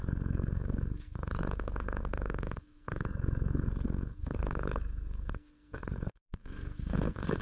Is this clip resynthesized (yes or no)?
yes